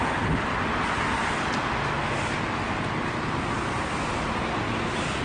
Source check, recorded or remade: recorded